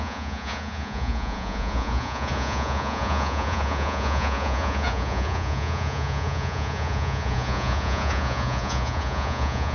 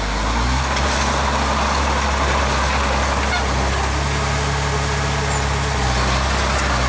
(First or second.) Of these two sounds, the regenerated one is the first